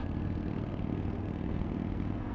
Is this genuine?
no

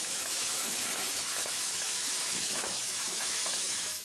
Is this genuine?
no